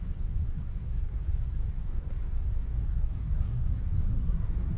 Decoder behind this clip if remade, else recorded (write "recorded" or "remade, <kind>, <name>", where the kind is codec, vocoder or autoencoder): remade, codec, SNAC